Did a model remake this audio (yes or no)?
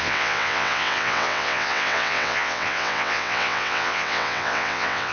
yes